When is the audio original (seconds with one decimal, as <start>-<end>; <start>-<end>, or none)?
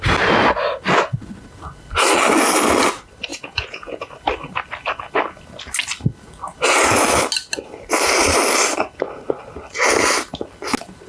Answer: 0.0-3.3; 4.0-11.1